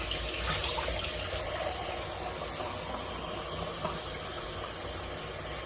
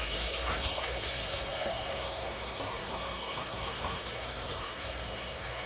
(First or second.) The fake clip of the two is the second